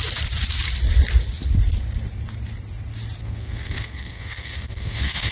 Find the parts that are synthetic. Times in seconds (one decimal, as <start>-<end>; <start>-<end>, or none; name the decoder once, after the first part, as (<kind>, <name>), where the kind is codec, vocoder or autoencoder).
3.2-5.3 (codec, SNAC)